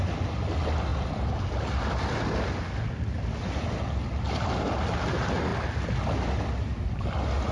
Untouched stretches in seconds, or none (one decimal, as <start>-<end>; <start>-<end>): 0.0-7.5